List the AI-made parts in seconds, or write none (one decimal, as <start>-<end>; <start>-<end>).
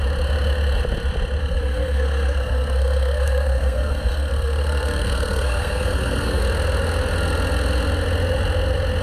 1.4-6.4